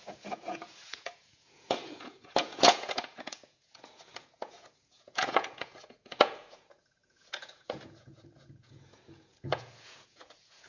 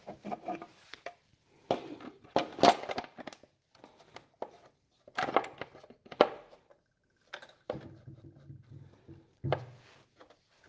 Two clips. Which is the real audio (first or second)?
second